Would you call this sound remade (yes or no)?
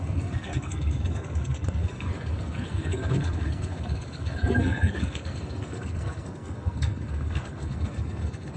yes